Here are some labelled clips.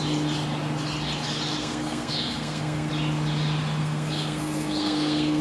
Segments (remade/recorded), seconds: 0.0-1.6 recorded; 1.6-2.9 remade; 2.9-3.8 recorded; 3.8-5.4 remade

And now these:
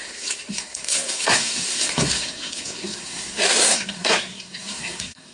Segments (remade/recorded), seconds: 0.0-5.3 remade

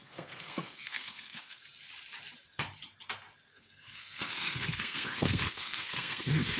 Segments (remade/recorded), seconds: 0.0-1.6 remade; 1.6-3.5 recorded; 3.5-6.6 remade